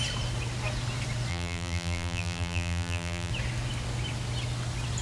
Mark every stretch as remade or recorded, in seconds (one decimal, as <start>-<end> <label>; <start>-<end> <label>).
0.0-1.3 recorded; 1.3-3.3 remade; 3.3-5.0 recorded

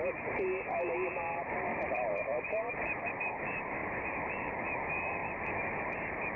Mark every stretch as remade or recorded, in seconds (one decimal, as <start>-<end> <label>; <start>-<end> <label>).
0.0-1.7 recorded; 1.7-3.1 remade; 3.1-3.8 recorded; 3.8-4.5 remade; 4.5-6.4 recorded